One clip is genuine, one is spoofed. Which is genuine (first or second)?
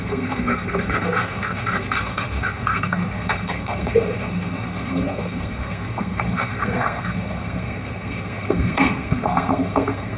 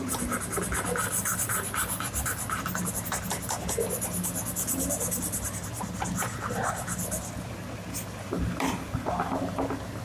second